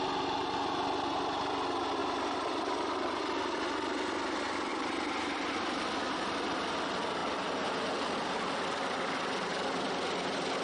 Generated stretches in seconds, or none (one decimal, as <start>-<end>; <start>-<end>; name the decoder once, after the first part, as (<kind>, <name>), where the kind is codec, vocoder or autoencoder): 2.0-3.2 (vocoder, BigVGAN v2); 4.7-5.5

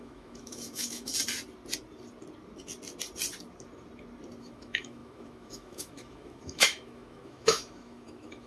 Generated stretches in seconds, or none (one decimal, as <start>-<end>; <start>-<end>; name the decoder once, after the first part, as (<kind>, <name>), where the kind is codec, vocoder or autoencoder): 0.0-1.1 (autoencoder, DAC-VAE); 4.4-8.5

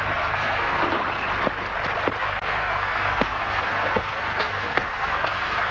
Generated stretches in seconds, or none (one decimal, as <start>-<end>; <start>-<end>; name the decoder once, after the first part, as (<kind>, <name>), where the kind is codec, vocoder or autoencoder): 0.0-0.8 (codec, SNAC); 2.2-5.7

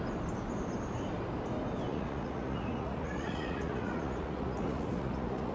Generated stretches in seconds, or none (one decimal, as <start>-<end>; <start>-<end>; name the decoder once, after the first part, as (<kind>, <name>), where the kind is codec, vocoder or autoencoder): 1.9-5.5 (vocoder, Vocos)